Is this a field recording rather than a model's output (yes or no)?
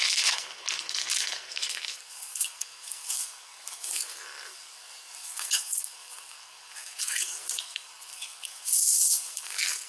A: no